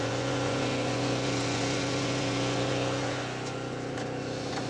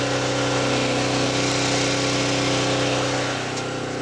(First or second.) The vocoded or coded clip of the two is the first